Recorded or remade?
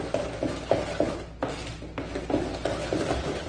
recorded